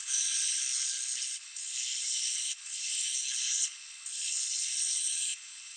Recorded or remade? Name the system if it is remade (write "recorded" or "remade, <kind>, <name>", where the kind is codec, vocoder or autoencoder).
remade, codec, HILCodec